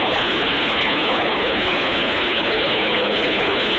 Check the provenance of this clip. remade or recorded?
remade